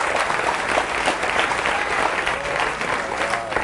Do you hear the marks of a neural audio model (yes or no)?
no